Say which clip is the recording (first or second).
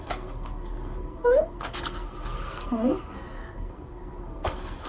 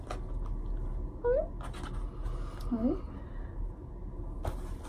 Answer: second